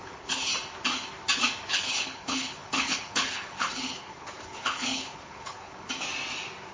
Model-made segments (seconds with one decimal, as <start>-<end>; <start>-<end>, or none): 0.0-0.5; 1.7-5.9